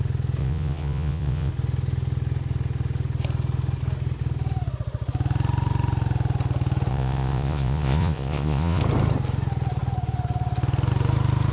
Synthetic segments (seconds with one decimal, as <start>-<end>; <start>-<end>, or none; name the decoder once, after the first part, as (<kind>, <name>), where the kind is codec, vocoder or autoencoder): 0.4-1.5 (vocoder, Vocos); 6.9-8.8